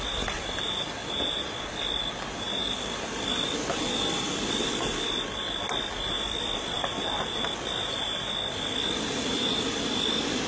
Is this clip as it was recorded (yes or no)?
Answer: yes